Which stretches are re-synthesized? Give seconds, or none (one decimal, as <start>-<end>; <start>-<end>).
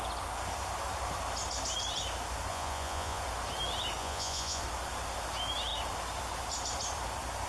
2.5-3.2; 4.0-4.6